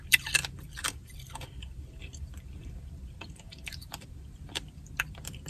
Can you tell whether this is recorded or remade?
remade